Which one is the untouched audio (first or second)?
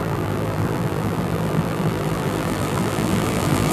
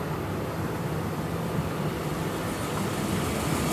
second